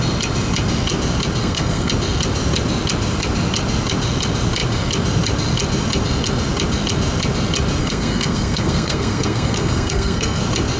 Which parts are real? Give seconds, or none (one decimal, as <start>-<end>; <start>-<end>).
0.0-1.4; 1.9-7.8; 10.4-10.8